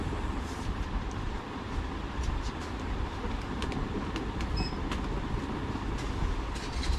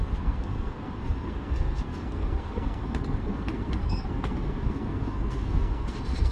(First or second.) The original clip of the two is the first